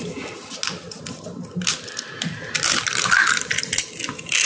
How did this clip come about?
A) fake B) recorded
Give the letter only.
B